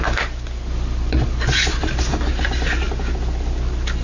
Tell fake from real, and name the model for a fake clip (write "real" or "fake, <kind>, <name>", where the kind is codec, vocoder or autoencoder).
real